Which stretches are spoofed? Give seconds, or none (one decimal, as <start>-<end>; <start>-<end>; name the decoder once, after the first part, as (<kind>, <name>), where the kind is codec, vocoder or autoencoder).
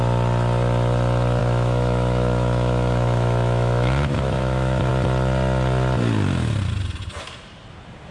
1.4-4.9 (autoencoder, DAC-VAE)